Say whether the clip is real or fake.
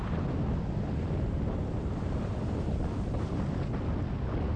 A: real